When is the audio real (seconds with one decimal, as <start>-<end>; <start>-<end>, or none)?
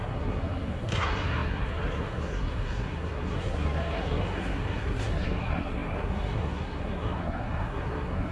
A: none